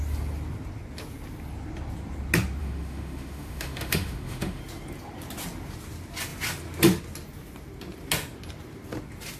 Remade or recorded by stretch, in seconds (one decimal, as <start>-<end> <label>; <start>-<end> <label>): 0.0-2.6 recorded; 2.6-4.6 remade; 4.6-9.4 recorded